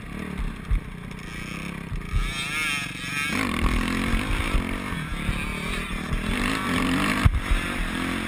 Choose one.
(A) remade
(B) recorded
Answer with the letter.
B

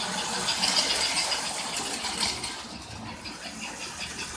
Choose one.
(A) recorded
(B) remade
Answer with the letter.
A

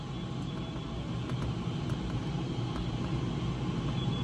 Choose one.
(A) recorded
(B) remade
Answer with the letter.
A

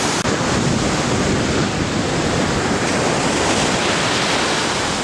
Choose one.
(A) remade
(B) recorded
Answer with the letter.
B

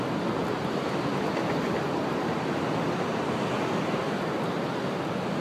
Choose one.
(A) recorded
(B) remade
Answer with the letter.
A